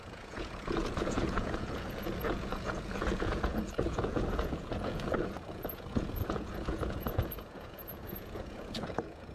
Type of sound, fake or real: fake